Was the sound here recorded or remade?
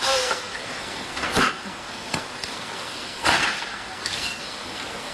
remade